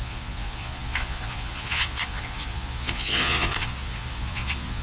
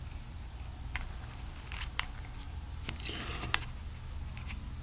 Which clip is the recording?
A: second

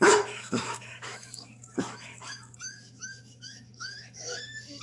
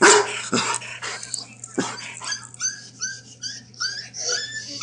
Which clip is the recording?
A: second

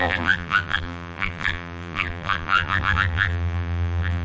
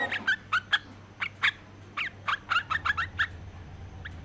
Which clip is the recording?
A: second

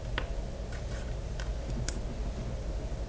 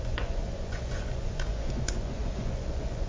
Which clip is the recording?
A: first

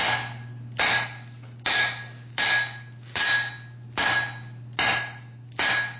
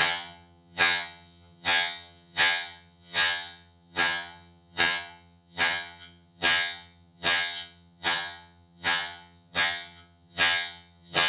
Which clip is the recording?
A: first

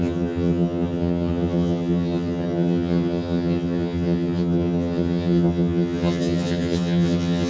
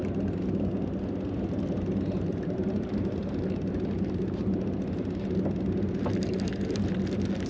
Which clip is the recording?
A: second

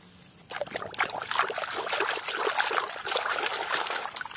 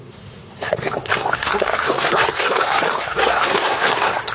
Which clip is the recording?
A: first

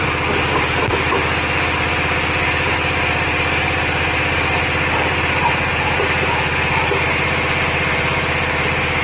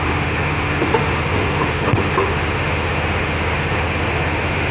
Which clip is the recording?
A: first